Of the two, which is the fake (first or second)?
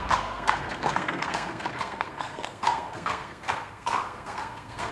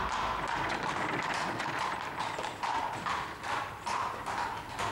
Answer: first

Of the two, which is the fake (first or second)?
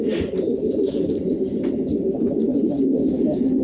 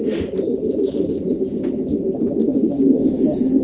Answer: first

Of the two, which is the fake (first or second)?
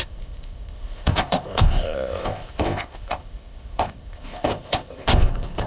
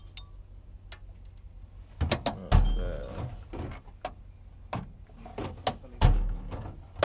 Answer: first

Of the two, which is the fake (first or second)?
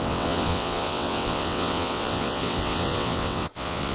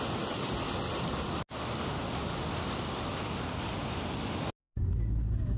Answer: first